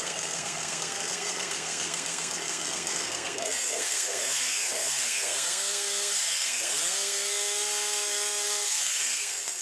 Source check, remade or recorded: remade